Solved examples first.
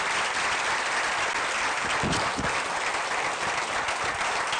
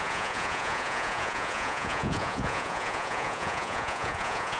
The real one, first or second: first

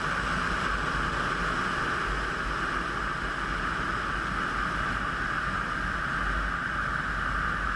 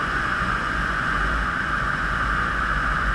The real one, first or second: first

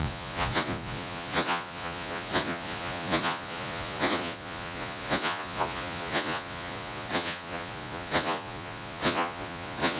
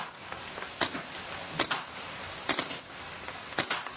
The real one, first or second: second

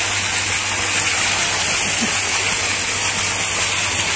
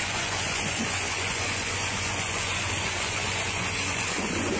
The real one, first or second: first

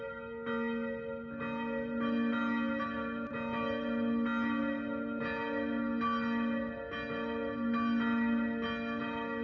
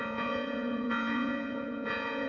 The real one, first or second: first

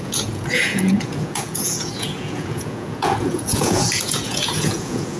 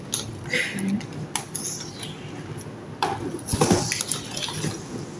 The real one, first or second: second